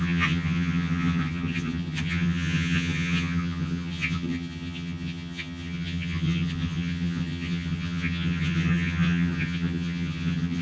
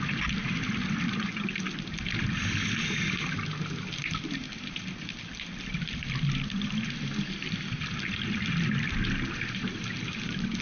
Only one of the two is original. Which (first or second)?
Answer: second